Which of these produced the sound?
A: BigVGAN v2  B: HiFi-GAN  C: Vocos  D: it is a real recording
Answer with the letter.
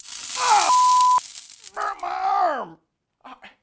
D